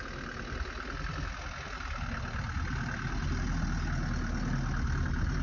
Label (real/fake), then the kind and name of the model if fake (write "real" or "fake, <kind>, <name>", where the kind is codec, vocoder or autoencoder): real